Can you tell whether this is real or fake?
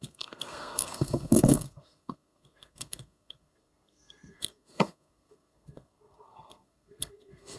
fake